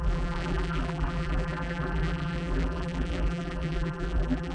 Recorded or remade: remade